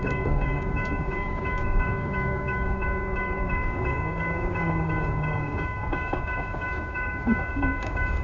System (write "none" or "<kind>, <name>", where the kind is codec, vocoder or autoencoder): codec, DAC